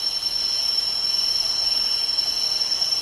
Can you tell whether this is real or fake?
real